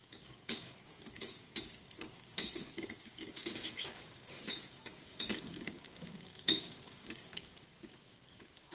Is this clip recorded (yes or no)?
no